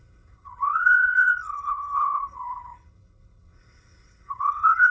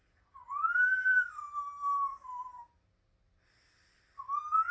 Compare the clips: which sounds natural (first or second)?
second